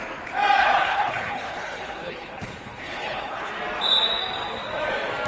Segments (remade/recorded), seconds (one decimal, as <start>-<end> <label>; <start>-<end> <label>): 0.0-0.6 recorded; 0.6-3.5 remade; 3.5-5.3 recorded